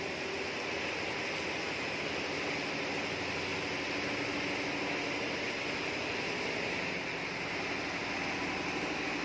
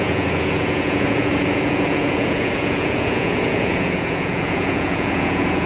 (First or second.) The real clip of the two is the first